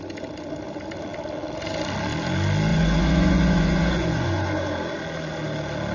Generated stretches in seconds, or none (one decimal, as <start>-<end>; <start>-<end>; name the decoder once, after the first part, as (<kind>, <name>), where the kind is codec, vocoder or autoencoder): 2.7-4.7 (vocoder, Vocos)